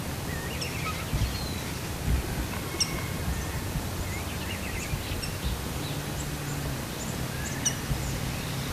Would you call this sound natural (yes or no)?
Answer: yes